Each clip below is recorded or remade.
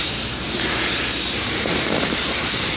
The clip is remade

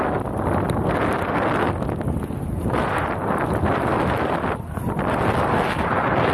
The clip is recorded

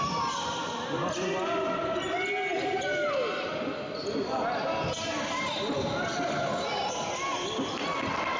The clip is recorded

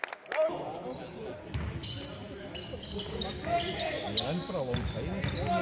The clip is recorded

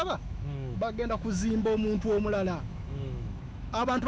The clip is remade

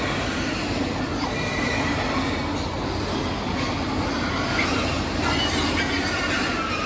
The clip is recorded